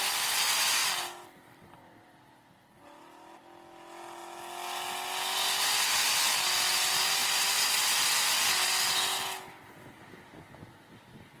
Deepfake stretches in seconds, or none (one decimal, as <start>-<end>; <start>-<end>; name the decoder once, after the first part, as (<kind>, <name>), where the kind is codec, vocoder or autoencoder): none